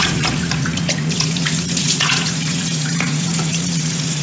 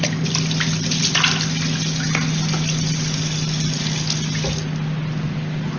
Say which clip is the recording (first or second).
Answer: second